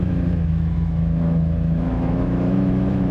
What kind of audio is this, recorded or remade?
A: remade